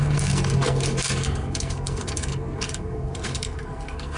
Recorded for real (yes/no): no